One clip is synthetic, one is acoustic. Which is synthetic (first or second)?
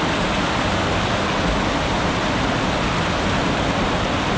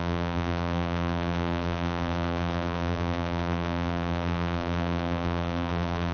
second